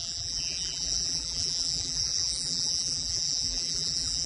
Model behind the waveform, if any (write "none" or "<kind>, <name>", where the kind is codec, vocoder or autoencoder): vocoder, BigVGAN v2